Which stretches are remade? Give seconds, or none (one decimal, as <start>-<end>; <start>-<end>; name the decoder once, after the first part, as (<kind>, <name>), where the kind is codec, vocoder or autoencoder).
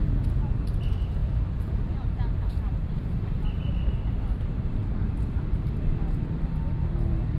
1.2-3.9 (vocoder, BigVGAN v2)